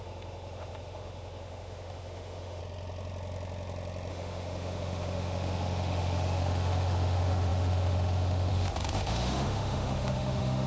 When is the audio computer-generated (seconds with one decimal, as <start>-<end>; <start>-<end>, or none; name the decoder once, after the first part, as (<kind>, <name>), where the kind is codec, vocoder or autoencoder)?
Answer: 0.0-2.6 (autoencoder, DAC-VAE); 4.1-10.7